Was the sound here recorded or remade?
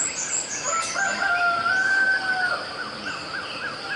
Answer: recorded